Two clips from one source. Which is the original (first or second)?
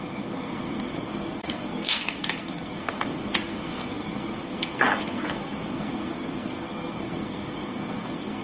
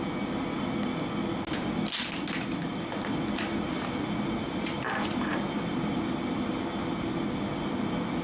second